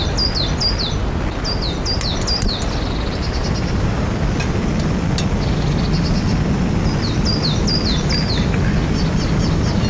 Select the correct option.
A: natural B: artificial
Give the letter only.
A